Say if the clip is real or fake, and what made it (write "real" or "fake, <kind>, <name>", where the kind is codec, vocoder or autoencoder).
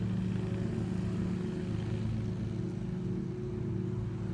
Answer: real